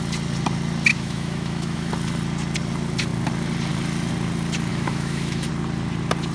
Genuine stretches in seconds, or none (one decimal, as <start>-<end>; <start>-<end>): 0.0-0.9; 1.9-4.7; 5.5-6.3